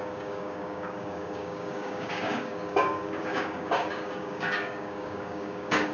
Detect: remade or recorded remade